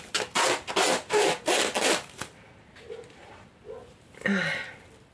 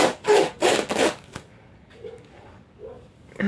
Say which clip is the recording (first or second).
first